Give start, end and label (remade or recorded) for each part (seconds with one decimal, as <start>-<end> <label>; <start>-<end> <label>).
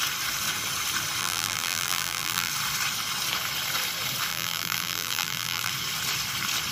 0.0-1.2 recorded; 1.2-2.5 remade; 2.5-4.3 recorded; 4.3-5.7 remade; 5.7-6.7 recorded